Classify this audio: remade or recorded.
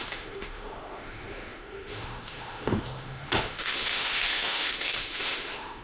remade